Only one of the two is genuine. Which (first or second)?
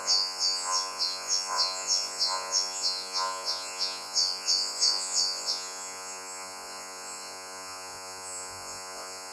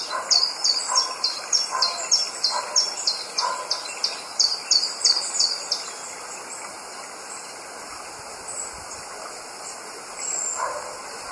second